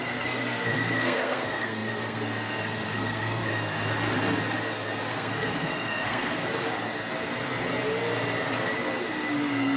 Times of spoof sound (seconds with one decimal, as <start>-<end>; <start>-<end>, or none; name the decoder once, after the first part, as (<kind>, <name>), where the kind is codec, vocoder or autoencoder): 0.0-3.5 (codec, SNAC); 5.1-6.4; 9.4-9.8